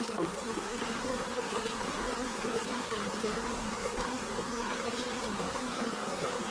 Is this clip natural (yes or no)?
no